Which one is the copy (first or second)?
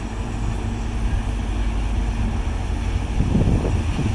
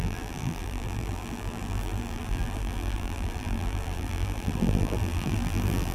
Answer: second